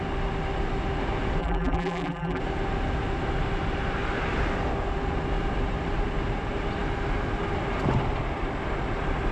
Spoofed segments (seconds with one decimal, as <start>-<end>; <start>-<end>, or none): 1.4-2.4